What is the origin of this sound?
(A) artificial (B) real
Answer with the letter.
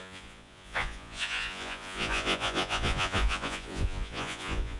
A